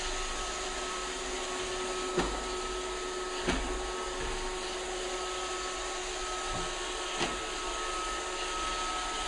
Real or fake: real